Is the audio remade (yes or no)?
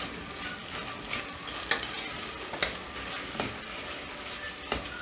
no